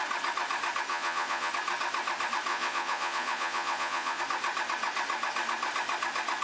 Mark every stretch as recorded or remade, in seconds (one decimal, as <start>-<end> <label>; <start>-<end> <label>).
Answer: 0.0-0.9 recorded; 0.9-1.5 remade; 1.5-2.5 recorded; 2.5-4.2 remade; 4.2-6.4 recorded